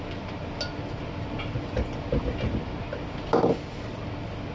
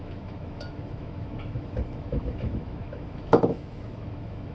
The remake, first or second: second